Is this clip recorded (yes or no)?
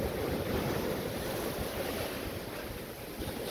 yes